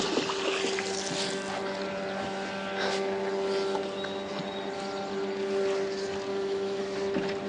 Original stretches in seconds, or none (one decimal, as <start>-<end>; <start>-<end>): 0.0-6.3; 6.8-7.5